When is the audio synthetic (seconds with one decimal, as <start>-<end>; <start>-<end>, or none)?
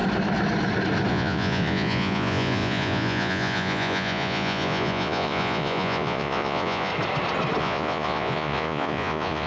1.1-6.9; 7.6-9.5